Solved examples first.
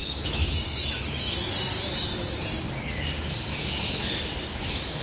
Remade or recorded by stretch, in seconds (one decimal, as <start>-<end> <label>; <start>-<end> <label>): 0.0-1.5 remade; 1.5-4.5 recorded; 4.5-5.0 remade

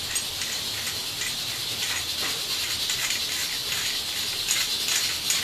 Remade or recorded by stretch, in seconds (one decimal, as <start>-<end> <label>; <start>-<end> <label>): 0.0-5.4 recorded

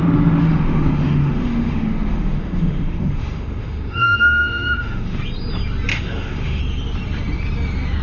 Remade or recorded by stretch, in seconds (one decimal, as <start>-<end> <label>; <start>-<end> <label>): 0.0-0.4 recorded; 0.4-5.2 remade; 5.2-5.9 recorded; 5.9-6.6 remade; 6.6-8.0 recorded

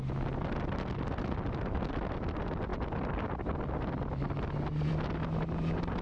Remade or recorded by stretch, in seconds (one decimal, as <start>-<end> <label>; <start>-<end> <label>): 0.0-6.0 recorded

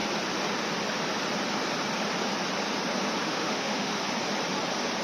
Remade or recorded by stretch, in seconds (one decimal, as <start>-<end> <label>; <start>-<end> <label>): 0.0-3.2 recorded; 3.2-4.0 remade; 4.0-5.0 recorded

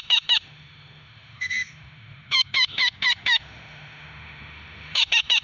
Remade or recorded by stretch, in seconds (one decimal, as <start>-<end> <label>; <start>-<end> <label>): 0.0-5.4 remade

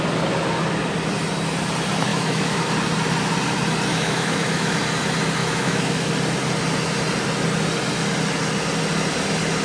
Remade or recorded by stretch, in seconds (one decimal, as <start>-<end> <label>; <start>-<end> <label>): 0.0-2.1 recorded; 2.1-2.7 remade; 2.7-3.9 recorded; 3.9-4.8 remade; 4.8-5.4 recorded; 5.4-6.1 remade; 6.1-9.6 recorded

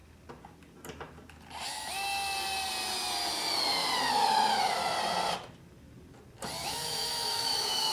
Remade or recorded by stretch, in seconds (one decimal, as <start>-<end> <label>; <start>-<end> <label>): 0.0-4.1 recorded; 4.1-4.8 remade; 4.8-6.6 recorded; 6.6-7.9 remade